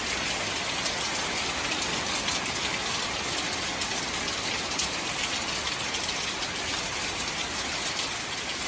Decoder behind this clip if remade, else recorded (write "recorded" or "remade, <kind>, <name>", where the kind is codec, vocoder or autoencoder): recorded